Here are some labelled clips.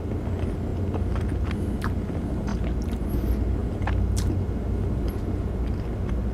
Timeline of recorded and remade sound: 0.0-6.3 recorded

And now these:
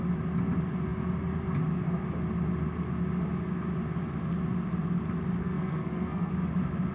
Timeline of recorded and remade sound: 0.0-5.4 recorded; 5.4-6.3 remade; 6.3-6.9 recorded

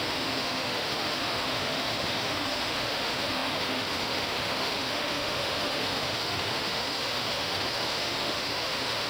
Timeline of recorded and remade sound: 0.0-9.1 remade